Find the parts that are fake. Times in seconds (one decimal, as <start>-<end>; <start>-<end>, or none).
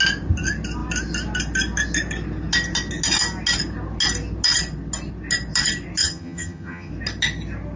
6.0-6.9